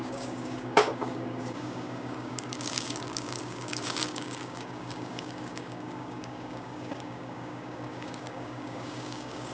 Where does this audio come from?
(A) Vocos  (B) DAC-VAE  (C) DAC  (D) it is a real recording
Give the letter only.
C